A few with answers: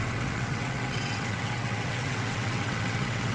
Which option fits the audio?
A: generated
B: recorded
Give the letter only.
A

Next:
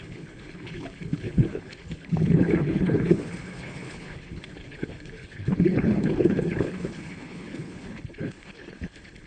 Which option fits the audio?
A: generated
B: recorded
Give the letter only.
A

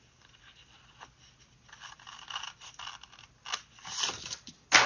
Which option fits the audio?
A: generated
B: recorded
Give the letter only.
B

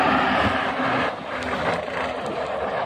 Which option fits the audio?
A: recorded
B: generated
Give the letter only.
A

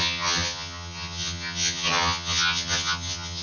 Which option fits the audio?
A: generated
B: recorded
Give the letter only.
A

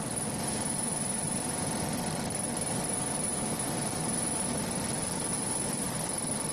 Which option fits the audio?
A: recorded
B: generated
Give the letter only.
A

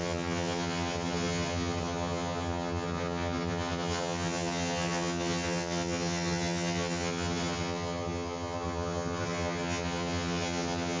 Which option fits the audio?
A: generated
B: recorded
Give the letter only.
A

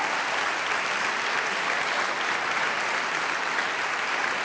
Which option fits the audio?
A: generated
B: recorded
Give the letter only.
B